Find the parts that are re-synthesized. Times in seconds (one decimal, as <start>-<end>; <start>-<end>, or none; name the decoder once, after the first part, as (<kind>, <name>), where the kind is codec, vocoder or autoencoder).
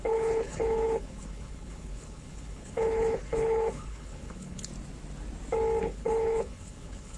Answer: 0.0-4.7 (codec, HILCodec); 5.8-7.2